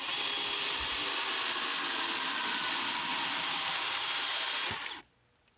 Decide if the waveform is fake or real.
real